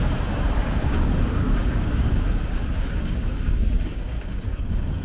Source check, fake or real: fake